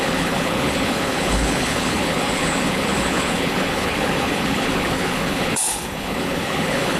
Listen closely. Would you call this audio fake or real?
fake